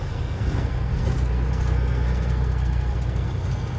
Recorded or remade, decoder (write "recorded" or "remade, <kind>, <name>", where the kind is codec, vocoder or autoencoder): remade, codec, SNAC